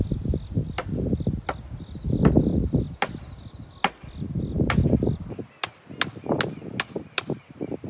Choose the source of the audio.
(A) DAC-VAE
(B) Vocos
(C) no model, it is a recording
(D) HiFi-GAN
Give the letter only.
C